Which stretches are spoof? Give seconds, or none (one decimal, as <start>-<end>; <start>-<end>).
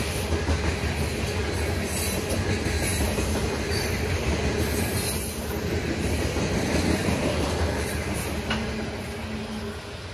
7.0-7.9